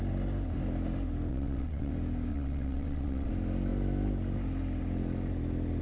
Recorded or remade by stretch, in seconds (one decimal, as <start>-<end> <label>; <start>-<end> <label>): 0.0-1.3 recorded; 1.3-1.9 remade; 1.9-2.3 recorded; 2.3-3.3 remade; 3.3-5.8 recorded